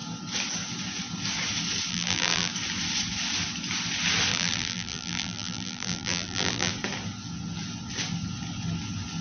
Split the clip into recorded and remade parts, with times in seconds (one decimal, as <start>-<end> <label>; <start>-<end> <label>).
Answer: 0.0-1.9 recorded; 1.9-2.5 remade; 2.5-4.3 recorded; 4.3-6.7 remade; 6.7-9.2 recorded